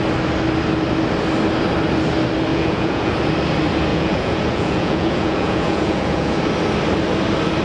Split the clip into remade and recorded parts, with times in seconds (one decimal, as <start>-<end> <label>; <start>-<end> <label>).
0.0-2.5 recorded; 2.5-3.1 remade; 3.1-3.9 recorded; 3.9-6.3 remade; 6.3-7.6 recorded